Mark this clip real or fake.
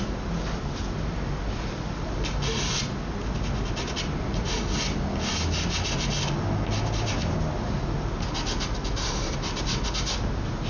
real